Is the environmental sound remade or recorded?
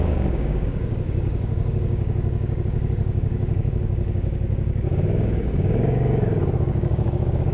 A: remade